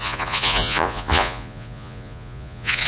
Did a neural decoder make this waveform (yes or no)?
yes